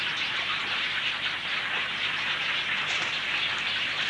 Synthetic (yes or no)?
no